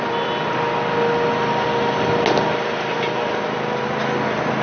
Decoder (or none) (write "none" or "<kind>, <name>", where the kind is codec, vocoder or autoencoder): none